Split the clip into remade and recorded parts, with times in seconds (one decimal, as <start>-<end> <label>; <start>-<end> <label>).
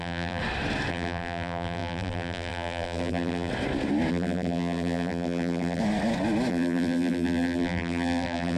0.0-0.4 remade; 0.4-0.9 recorded; 0.9-3.5 remade; 3.5-4.1 recorded; 4.1-5.8 remade; 5.8-6.5 recorded; 6.5-8.6 remade